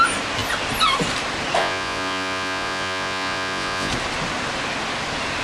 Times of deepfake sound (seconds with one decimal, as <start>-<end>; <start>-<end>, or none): 1.6-3.9